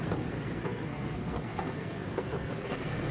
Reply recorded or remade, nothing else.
remade